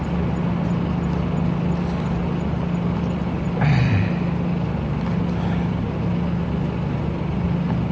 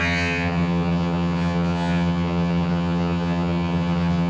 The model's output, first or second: second